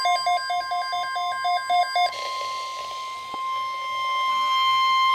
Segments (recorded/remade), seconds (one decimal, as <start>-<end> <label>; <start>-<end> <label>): 0.0-4.3 recorded; 4.3-5.1 remade